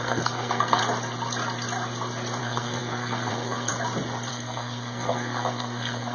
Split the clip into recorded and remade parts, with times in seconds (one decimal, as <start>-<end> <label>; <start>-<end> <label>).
0.0-0.8 remade; 0.8-2.4 recorded; 2.4-3.7 remade; 3.7-4.3 recorded; 4.3-6.1 remade